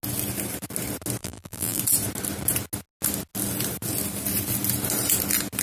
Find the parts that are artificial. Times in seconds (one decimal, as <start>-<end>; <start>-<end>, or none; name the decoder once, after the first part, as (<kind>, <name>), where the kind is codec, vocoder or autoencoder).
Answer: 1.2-1.8 (vocoder, BigVGAN v2)